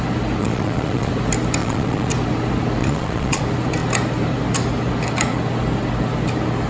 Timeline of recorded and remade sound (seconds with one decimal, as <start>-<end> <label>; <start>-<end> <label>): 0.0-0.4 recorded; 0.4-1.1 remade; 1.1-1.6 recorded; 1.6-2.1 remade; 2.1-2.8 recorded; 2.8-3.4 remade; 3.4-6.7 recorded